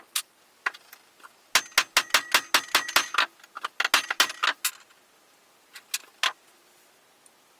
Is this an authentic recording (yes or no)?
yes